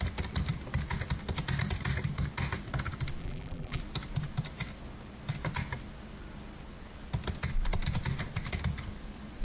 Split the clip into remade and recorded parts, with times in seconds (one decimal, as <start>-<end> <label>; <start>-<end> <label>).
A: 0.0-3.2 recorded; 3.2-3.8 remade; 3.8-9.4 recorded